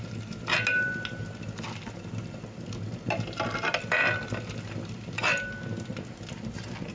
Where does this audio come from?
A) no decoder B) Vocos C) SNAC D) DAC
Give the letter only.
A